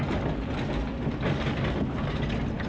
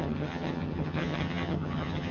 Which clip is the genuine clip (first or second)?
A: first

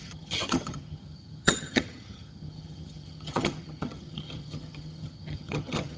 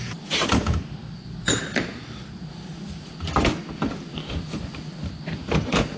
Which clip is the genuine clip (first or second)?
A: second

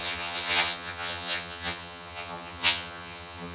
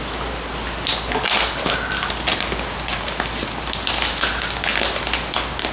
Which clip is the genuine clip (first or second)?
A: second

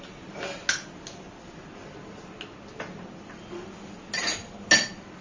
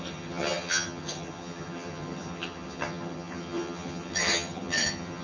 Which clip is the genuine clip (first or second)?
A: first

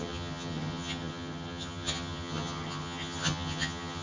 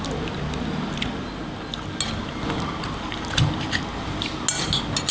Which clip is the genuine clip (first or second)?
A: second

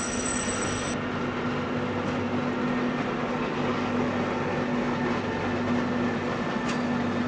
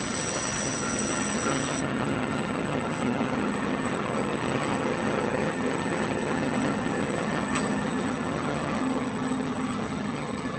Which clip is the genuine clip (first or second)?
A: first